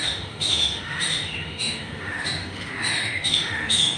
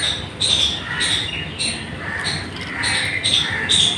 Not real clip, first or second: first